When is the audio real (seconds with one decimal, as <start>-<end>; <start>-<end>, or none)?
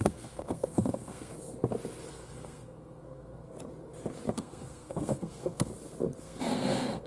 1.3-2.1; 3.5-4.3; 5.7-6.2